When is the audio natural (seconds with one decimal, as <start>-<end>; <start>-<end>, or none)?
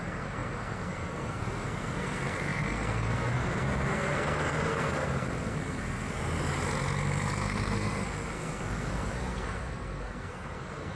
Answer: 6.2-7.3